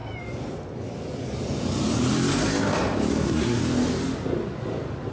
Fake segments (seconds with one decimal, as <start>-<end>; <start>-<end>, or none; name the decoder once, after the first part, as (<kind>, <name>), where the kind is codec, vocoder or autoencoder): 3.1-3.6 (codec, SNAC)